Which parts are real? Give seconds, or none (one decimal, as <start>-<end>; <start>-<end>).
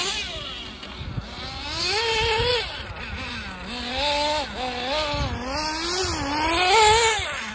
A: 0.0-7.5